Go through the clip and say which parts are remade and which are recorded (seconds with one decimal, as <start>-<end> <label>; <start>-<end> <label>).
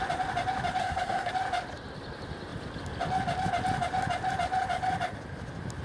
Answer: 0.0-0.8 recorded; 0.8-1.3 remade; 1.3-5.8 recorded